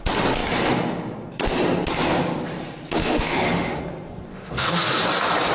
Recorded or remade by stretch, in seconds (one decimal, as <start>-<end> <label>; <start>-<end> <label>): 0.0-3.0 recorded; 3.0-3.8 remade; 3.8-4.3 recorded; 4.3-5.0 remade; 5.0-5.5 recorded